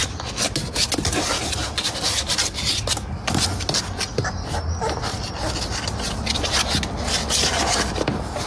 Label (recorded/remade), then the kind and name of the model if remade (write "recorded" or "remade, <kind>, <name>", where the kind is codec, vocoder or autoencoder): recorded